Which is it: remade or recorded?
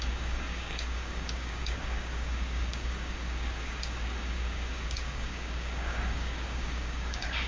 remade